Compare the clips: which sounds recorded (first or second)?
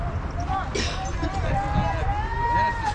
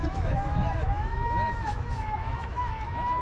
first